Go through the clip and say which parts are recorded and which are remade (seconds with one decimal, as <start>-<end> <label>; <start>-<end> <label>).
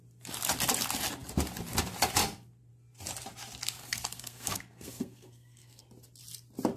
0.0-3.8 recorded; 3.8-5.8 remade; 5.8-6.8 recorded